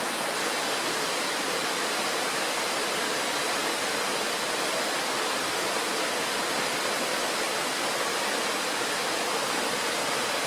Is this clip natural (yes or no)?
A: no